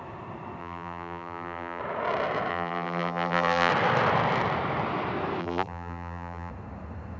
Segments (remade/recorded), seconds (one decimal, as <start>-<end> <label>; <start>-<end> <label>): 0.0-0.6 recorded; 0.6-1.8 remade; 1.8-2.5 recorded; 2.5-3.7 remade; 3.7-5.4 recorded; 5.4-6.5 remade; 6.5-7.2 recorded